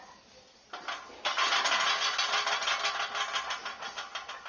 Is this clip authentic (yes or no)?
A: yes